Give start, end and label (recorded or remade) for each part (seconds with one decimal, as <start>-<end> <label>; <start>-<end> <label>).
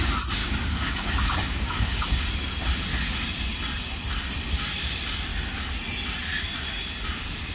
0.0-0.4 recorded; 0.4-2.2 remade; 2.2-7.5 recorded